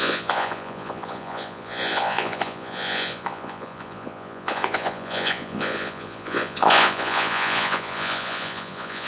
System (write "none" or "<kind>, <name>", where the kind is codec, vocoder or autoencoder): vocoder, Vocos